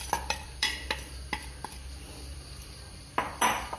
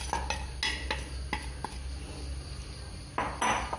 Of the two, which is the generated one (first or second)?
first